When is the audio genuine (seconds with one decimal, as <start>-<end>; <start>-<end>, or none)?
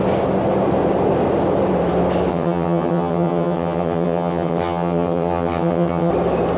0.0-2.3; 6.1-6.6